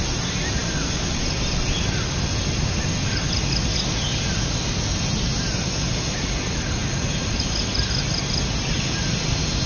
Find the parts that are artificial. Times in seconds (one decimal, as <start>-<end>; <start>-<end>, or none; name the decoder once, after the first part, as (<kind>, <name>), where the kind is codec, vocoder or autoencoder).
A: none